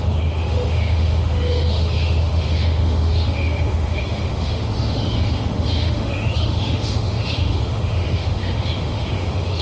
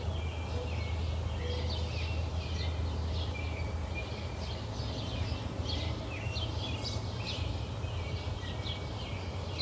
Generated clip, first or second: first